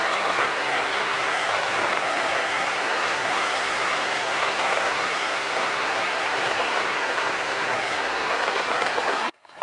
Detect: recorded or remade remade